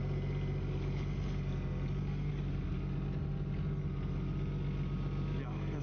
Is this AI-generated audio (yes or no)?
no